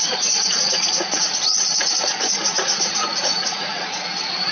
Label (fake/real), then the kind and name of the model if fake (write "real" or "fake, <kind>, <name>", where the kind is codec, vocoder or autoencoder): fake, vocoder, Vocos